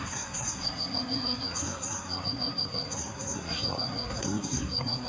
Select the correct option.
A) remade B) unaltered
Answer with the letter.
A